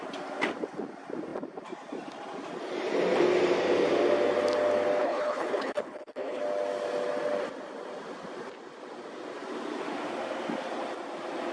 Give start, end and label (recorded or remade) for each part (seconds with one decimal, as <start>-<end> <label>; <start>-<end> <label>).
0.0-5.0 recorded; 5.0-6.4 remade; 6.4-11.5 recorded